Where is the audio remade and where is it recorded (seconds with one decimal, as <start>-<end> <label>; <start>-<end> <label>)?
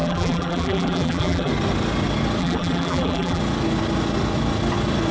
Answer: 0.0-1.5 remade; 1.5-2.4 recorded; 2.4-3.4 remade; 3.4-5.1 recorded